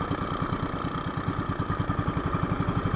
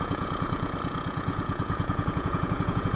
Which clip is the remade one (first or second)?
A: second